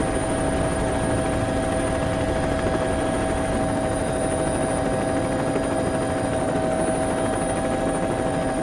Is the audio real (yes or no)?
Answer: yes